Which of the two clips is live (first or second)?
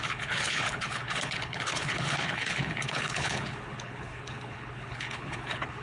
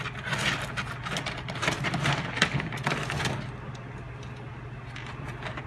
second